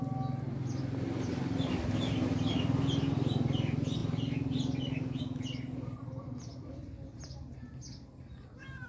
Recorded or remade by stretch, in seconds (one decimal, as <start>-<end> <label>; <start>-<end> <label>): 0.0-8.9 recorded